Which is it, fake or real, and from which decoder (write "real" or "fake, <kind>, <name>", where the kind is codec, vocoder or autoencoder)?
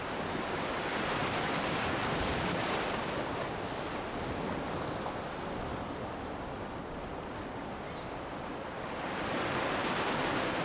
real